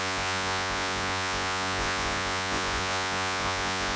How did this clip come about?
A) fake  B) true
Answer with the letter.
A